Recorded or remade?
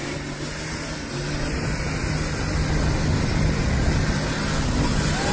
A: recorded